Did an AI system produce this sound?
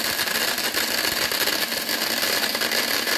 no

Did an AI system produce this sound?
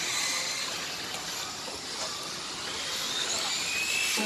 no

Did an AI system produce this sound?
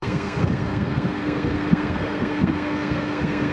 yes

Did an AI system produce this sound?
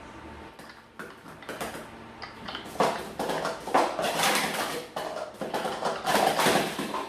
no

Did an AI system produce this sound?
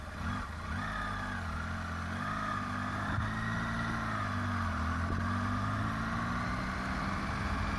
no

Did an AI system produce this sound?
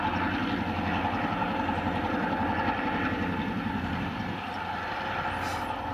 no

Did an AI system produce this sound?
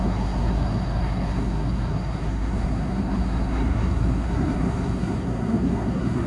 yes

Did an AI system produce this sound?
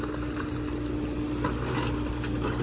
no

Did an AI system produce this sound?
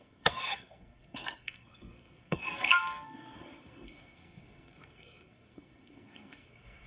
yes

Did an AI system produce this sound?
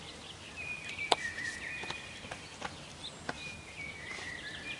no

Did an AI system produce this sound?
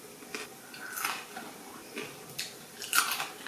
no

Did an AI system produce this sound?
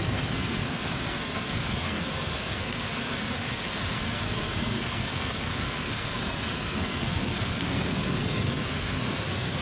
yes